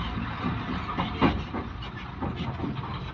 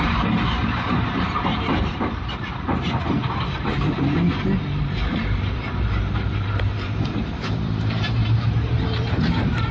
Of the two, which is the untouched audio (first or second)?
first